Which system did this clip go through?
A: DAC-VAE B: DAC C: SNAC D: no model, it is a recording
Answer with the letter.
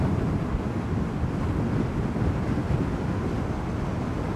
D